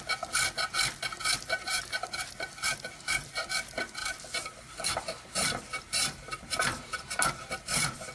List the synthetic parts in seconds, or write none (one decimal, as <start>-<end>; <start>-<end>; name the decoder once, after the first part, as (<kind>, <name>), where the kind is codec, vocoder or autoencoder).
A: 1.3-3.4 (vocoder, BigVGAN v2); 4.0-8.1